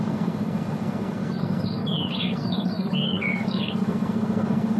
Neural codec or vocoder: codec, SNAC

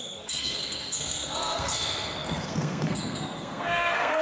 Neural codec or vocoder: codec, SNAC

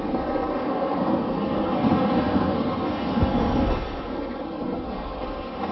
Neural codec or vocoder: codec, SNAC